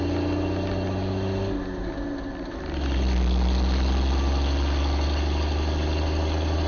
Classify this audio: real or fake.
real